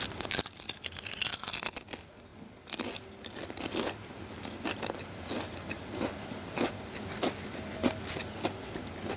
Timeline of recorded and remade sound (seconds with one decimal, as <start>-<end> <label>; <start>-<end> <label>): 0.0-9.2 recorded